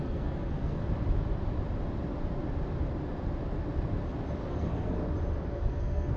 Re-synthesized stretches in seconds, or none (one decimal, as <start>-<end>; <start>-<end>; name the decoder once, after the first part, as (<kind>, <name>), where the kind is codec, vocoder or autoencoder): 0.0-0.8 (codec, SNAC); 4.5-5.0; 5.5-6.2